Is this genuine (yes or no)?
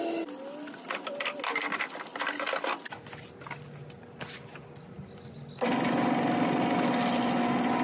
yes